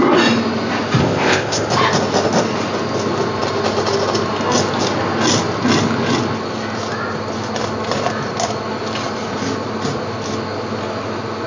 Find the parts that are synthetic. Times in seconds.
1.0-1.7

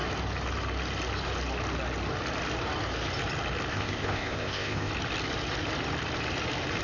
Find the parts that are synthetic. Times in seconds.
3.7-4.9

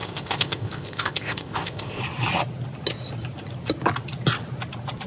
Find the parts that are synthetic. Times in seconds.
0.0-2.0

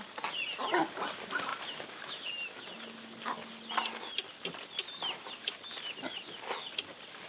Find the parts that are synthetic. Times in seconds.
none

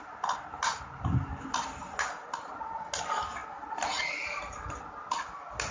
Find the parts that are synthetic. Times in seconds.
none

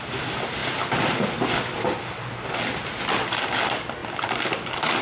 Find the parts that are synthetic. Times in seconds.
none

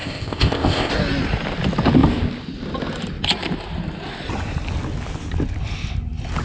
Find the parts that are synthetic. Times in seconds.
0.0-0.9

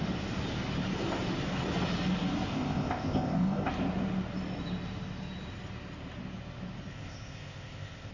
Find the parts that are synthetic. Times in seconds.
2.5-3.7; 6.9-8.1